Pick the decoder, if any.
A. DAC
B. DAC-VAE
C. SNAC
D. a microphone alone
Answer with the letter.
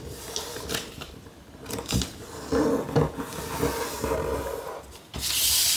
D